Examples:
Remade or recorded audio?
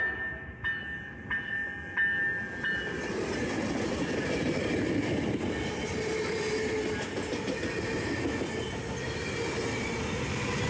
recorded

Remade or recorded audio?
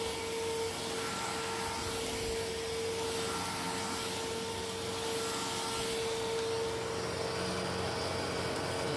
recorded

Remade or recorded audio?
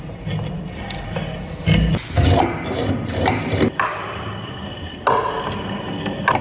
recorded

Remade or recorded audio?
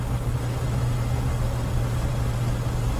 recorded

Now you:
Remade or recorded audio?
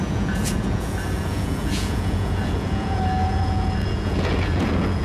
remade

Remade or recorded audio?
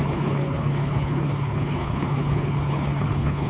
remade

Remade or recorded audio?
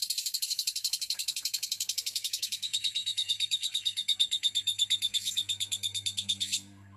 remade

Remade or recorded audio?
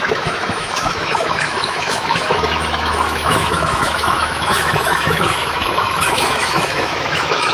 remade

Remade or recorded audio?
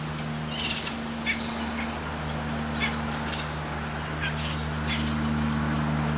recorded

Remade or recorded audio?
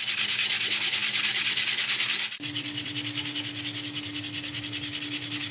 recorded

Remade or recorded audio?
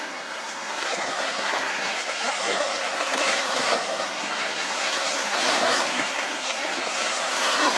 remade